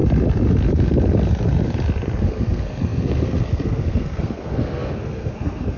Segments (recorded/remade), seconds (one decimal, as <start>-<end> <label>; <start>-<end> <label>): 0.0-2.2 recorded; 2.2-5.8 remade